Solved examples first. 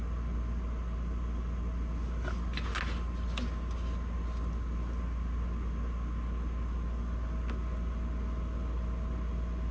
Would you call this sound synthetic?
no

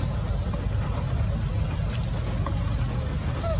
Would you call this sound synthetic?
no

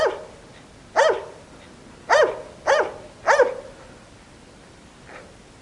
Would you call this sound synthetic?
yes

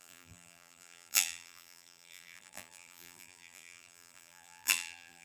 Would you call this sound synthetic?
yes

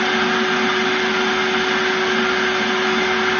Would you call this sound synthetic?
no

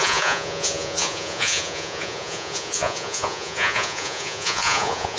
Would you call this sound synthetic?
yes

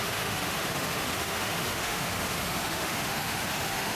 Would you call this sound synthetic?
yes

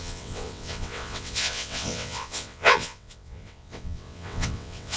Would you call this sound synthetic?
yes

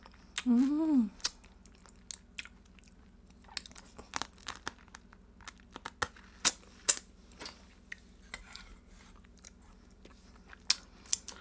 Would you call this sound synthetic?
no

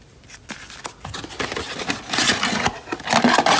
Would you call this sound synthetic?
no